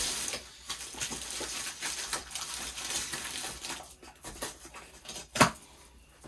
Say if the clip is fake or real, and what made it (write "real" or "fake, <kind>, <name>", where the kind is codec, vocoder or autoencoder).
real